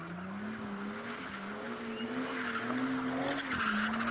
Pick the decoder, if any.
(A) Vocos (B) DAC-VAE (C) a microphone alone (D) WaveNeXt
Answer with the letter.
C